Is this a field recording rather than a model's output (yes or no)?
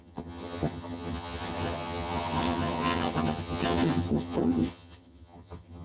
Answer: no